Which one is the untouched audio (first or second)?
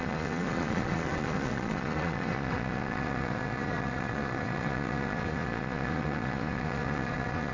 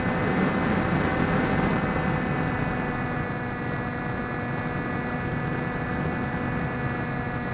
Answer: second